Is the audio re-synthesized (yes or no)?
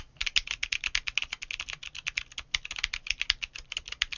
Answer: no